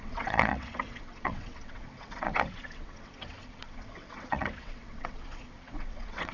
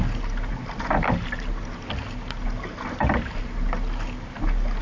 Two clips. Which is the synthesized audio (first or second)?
first